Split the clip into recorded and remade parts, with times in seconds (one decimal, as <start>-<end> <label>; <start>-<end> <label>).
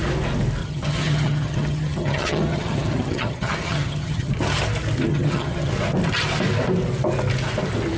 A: 0.0-0.6 recorded; 0.6-4.3 remade; 4.3-5.1 recorded; 5.1-5.7 remade; 5.7-8.0 recorded